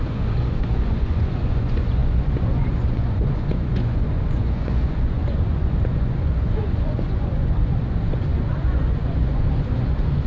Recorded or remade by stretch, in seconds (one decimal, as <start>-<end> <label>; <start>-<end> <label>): 0.0-10.3 remade